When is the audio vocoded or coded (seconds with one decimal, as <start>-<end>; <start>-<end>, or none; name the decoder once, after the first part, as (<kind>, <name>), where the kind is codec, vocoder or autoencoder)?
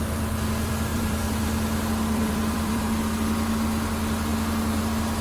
0.9-2.8 (vocoder, BigVGAN v2)